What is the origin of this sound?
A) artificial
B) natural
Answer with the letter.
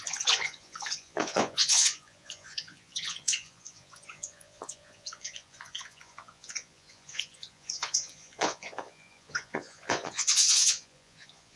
A